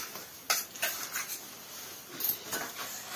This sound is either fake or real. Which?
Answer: real